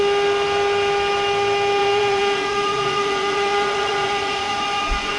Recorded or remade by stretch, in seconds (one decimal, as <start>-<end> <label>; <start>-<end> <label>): 0.0-1.8 recorded; 1.8-5.2 remade